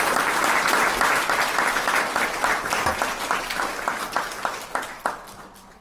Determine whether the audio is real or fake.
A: real